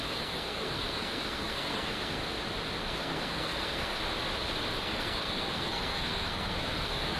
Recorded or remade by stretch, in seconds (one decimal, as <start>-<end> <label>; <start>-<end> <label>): 0.0-2.2 remade; 2.2-2.8 recorded; 2.8-4.0 remade; 4.0-4.8 recorded; 4.8-7.2 remade